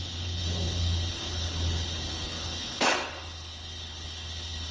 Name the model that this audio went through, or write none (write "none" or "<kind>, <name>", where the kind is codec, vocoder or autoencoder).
codec, HILCodec